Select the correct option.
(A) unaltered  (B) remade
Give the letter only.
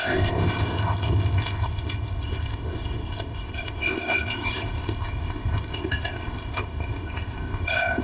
B